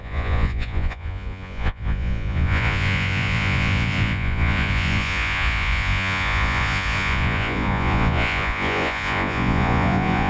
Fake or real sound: fake